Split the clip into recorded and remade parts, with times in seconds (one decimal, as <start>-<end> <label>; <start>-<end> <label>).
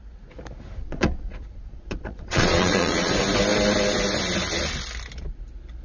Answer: 0.0-0.8 recorded; 0.8-3.1 remade; 3.1-5.8 recorded